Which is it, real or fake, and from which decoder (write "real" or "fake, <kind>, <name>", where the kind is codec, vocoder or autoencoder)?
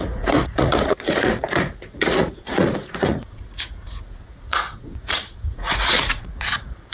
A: fake, vocoder, Vocos